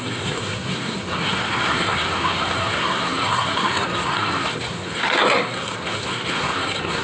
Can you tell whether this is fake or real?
fake